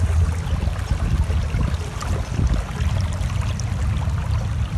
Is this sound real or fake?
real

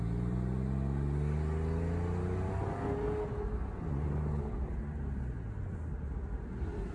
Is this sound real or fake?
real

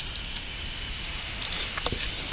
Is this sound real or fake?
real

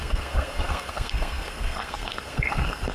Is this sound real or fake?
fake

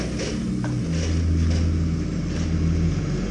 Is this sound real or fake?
real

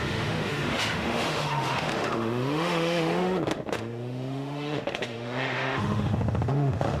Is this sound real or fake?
fake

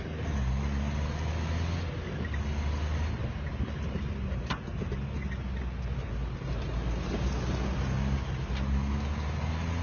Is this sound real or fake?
real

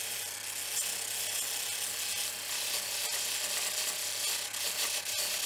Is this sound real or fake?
real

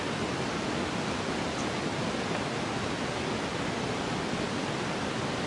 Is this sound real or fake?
real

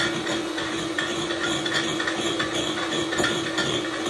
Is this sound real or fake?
fake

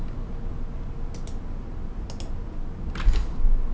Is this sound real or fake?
real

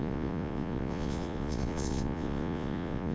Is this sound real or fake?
fake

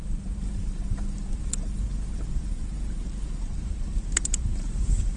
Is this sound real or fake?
fake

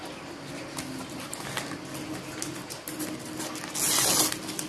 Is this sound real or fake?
real